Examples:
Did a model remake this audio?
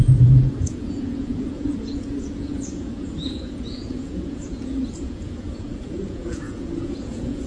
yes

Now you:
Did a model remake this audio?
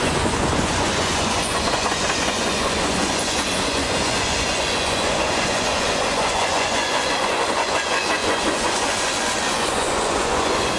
yes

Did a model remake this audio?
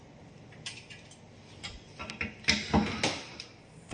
no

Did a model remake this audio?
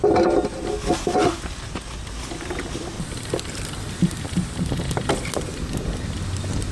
no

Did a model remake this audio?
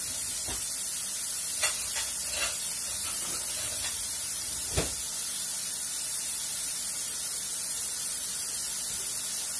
no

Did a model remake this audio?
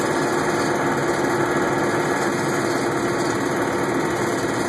no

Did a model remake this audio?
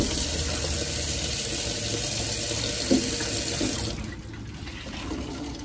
no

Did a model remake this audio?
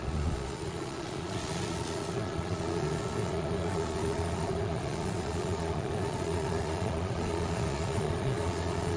yes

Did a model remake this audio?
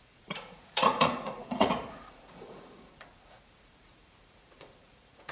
yes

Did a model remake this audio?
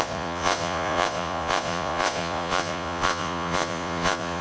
yes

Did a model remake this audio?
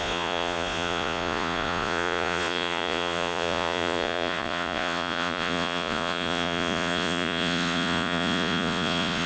yes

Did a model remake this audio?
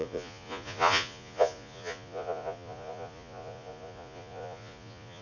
yes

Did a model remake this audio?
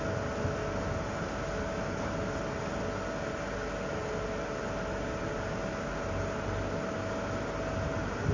no